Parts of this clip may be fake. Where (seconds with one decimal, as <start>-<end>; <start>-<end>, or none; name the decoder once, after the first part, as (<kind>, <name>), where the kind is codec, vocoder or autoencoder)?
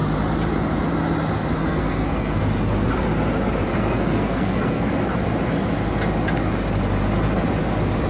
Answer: 1.6-2.4 (codec, SNAC); 3.7-4.9